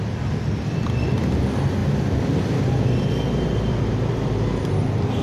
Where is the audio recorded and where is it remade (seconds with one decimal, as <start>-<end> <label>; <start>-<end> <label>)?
0.0-5.2 recorded